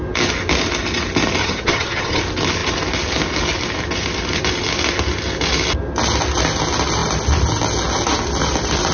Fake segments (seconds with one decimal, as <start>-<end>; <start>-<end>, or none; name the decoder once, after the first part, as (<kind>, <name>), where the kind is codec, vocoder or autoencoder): 1.4-2.2 (vocoder, HiFi-GAN)